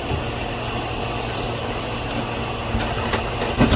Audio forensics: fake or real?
real